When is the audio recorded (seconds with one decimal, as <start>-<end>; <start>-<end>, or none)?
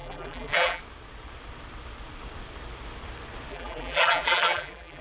0.8-3.5